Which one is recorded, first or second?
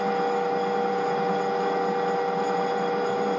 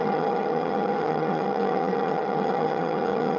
first